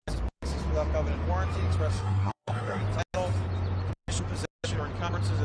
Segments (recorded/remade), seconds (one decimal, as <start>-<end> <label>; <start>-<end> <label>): 0.0-1.9 recorded; 1.9-2.8 remade; 2.8-5.4 recorded